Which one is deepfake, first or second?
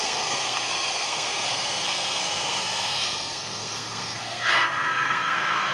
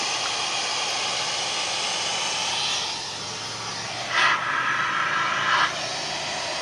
first